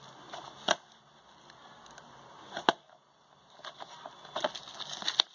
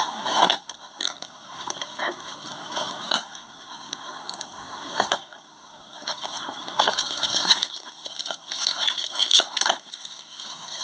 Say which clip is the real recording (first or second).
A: first